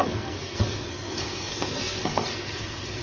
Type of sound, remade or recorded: remade